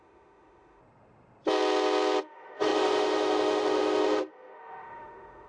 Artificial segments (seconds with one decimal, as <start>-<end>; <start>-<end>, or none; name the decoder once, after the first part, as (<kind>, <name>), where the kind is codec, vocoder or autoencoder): 0.0-0.8 (autoencoder, DAC-VAE); 2.2-5.5